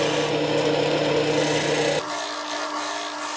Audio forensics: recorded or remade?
recorded